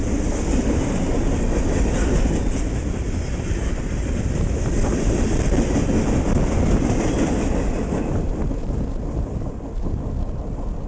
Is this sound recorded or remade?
remade